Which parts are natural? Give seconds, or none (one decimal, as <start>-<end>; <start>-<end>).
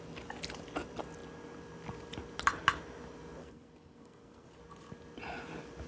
0.0-3.4; 4.6-5.9